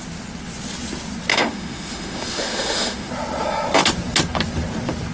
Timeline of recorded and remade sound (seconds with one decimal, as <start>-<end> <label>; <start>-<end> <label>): 0.0-1.3 recorded; 1.3-3.1 remade; 3.1-5.1 recorded